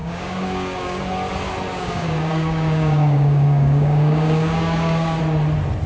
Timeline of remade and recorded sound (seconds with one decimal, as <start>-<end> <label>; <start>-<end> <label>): 0.0-1.0 remade; 1.0-1.7 recorded; 1.7-5.2 remade; 5.2-5.9 recorded